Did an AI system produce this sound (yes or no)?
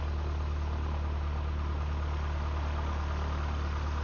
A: no